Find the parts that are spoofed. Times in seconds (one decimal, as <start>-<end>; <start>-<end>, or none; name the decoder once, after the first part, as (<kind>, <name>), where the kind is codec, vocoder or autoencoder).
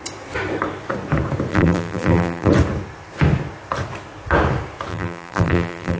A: 1.5-2.5 (vocoder, BigVGAN v2); 4.9-6.0